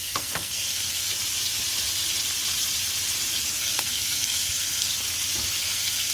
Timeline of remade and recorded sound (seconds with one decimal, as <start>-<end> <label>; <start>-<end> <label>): 0.0-1.1 remade; 1.1-3.6 recorded; 3.6-4.9 remade; 4.9-5.6 recorded; 5.6-6.1 remade